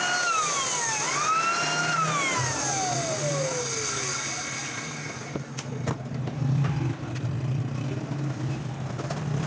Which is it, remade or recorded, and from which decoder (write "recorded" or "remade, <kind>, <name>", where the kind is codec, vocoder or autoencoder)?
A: recorded